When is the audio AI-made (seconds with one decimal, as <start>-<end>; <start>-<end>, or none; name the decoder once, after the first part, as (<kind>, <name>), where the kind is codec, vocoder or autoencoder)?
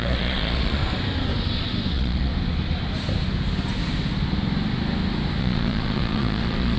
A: 0.0-0.8 (vocoder, Vocos); 1.9-2.3; 5.4-6.8